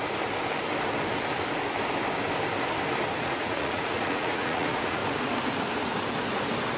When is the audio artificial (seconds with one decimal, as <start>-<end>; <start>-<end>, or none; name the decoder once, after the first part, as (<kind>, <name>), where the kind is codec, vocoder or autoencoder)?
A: 3.2-5.0 (vocoder, Vocos)